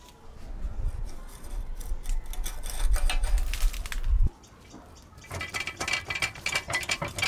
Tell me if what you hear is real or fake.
real